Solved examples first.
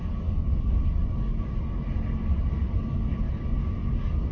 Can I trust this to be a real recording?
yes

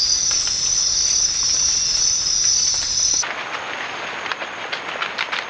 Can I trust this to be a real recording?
yes